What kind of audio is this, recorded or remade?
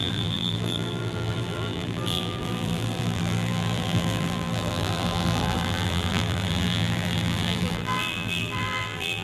remade